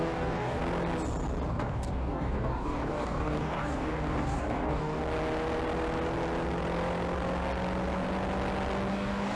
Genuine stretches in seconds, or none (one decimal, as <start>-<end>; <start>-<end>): 0.6-1.5; 5.0-8.9